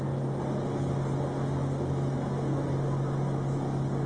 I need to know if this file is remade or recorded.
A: recorded